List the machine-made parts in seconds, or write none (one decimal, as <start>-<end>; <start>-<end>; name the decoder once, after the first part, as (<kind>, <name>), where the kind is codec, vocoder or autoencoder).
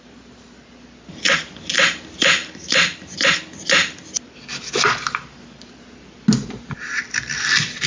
2.4-4.3 (vocoder, BigVGAN v2)